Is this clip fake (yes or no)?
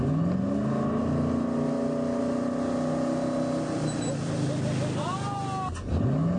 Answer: no